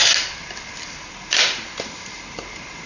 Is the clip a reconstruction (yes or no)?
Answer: no